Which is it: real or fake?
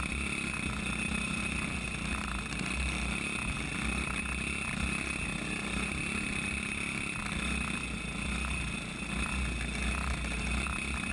real